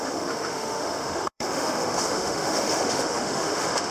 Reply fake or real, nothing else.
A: fake